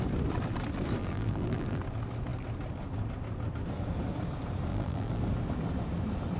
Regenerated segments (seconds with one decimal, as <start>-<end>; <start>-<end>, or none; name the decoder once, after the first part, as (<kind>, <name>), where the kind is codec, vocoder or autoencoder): 1.0-1.8 (vocoder, BigVGAN v2); 4.7-5.2